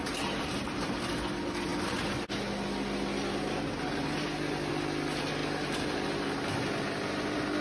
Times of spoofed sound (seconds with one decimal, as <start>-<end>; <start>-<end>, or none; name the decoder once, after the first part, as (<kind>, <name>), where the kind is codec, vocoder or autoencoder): none